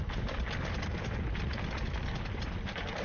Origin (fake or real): real